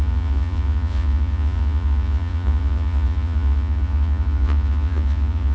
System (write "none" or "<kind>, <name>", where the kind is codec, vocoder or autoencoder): vocoder, Vocos